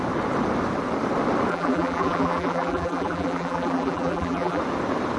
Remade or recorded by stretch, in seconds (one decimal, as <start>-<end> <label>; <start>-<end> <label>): 0.0-1.5 recorded; 1.5-4.6 remade; 4.6-5.2 recorded